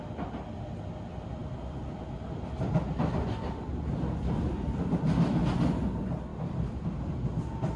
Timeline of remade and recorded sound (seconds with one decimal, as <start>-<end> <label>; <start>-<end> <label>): 0.0-7.8 recorded